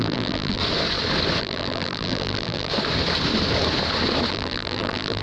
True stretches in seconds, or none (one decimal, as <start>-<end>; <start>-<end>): 0.6-1.4; 2.7-4.3